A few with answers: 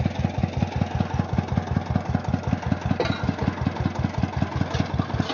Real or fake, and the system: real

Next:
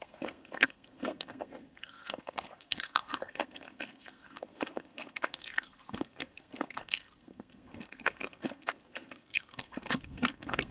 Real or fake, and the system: fake, codec, SNAC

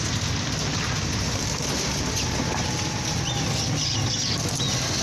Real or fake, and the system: real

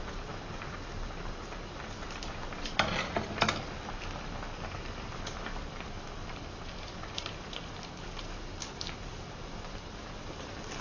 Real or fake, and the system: real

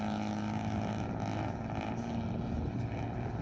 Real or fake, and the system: real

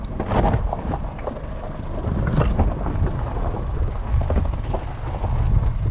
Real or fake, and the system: real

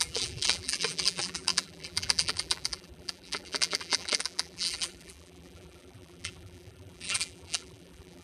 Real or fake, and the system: fake, vocoder, BigVGAN v2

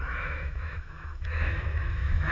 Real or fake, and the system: fake, autoencoder, DAC-VAE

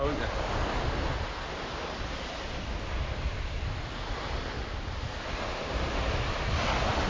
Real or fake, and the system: real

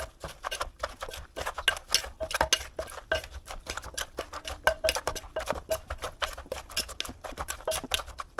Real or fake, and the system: real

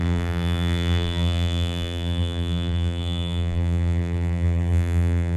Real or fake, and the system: fake, vocoder, BigVGAN v2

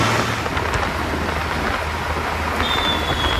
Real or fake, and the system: real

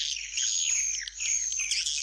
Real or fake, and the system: real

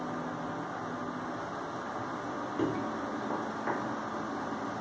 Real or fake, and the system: real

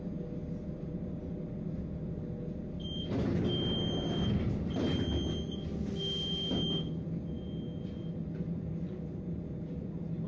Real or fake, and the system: real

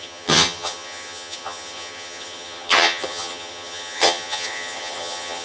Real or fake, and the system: fake, vocoder, HiFi-GAN